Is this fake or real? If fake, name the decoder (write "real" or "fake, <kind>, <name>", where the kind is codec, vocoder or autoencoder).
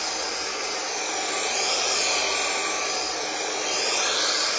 real